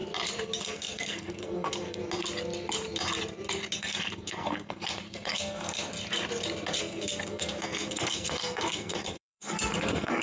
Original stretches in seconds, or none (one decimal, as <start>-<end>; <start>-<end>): 0.0-0.6; 2.0-3.8; 5.9-6.8